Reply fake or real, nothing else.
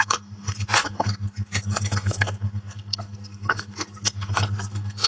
fake